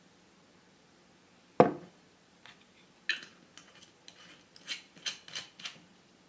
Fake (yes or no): no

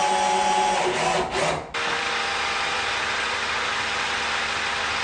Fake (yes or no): no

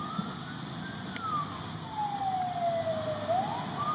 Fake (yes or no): no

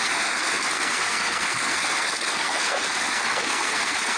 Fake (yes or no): yes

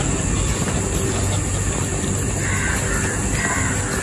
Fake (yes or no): no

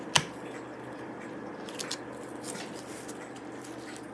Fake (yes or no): no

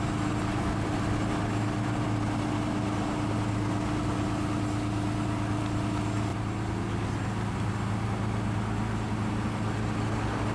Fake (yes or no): no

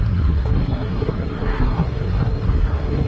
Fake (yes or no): yes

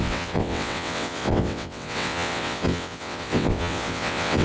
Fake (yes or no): yes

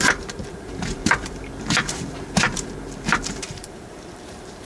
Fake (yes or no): yes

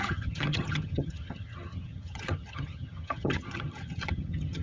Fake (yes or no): yes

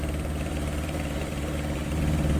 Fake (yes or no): yes